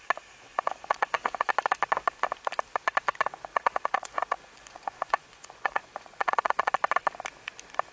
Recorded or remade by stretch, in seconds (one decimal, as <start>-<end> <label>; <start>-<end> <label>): 0.0-0.5 recorded; 0.5-1.5 remade; 1.5-3.5 recorded; 3.5-6.7 remade; 6.7-7.9 recorded